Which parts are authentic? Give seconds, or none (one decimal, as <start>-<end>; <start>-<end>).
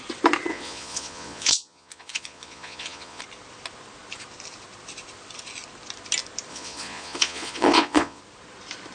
0.0-0.5; 3.2-6.5; 8.2-8.9